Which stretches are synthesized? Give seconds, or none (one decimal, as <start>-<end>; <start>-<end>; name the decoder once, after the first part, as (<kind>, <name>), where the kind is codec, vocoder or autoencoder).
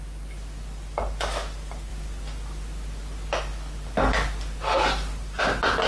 none